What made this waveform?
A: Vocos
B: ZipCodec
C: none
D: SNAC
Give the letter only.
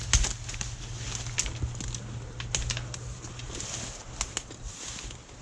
C